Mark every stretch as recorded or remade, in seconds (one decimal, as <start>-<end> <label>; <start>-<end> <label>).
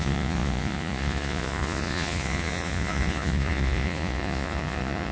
0.0-5.1 remade